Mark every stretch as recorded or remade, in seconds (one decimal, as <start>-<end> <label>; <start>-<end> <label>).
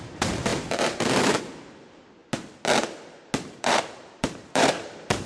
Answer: 0.0-2.2 remade; 2.2-3.5 recorded; 3.5-5.3 remade